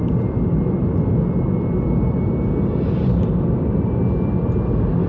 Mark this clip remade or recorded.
recorded